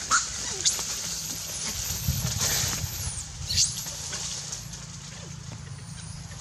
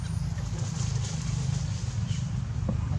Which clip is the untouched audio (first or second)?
second